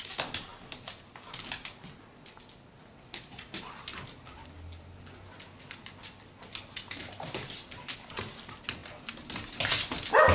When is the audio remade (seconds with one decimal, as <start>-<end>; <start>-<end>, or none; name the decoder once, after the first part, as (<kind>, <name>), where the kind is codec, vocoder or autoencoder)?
none